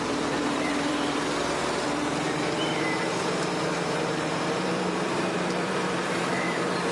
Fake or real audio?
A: fake